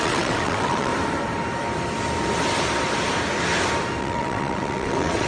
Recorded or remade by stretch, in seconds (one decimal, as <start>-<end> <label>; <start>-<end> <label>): 0.0-0.9 remade; 0.9-4.0 recorded; 4.0-5.3 remade